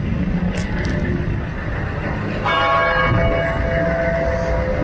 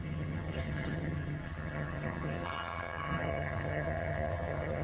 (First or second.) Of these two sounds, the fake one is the second